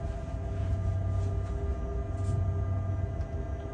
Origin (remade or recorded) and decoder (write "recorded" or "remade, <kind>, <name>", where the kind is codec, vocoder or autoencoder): recorded